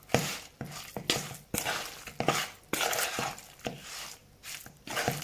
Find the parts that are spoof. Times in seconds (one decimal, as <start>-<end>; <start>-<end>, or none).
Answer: none